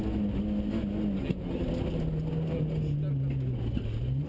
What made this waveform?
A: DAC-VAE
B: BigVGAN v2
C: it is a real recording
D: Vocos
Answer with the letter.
C